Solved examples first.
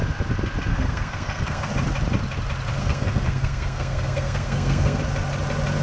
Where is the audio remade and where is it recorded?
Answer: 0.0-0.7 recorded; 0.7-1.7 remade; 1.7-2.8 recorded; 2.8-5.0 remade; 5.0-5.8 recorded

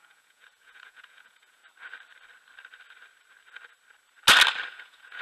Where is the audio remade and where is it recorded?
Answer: 0.0-1.6 remade; 1.6-4.7 recorded; 4.7-5.2 remade

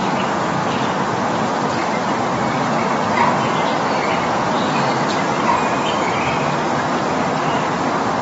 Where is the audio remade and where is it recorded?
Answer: 0.0-0.6 recorded; 0.6-5.5 remade; 5.5-8.2 recorded

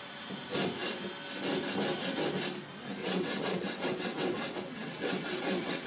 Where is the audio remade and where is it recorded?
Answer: 0.0-3.0 recorded; 3.0-5.9 remade

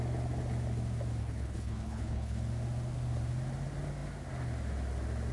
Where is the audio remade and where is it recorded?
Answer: 0.0-1.2 recorded; 1.2-2.4 remade; 2.4-5.3 recorded